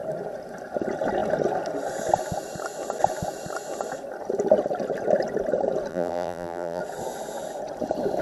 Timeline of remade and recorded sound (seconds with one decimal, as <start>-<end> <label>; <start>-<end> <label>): 0.0-5.9 recorded; 5.9-6.8 remade; 6.8-8.2 recorded